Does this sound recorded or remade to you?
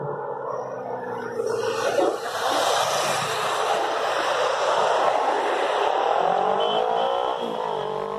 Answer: recorded